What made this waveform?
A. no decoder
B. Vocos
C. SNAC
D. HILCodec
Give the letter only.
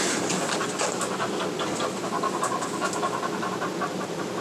A